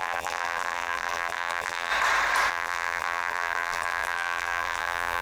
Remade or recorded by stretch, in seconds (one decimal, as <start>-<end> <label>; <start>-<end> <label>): 0.0-1.9 remade; 1.9-2.5 recorded; 2.5-5.2 remade

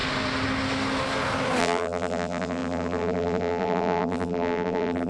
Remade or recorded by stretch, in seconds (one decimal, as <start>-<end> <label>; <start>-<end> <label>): 0.0-1.6 recorded; 1.6-5.1 remade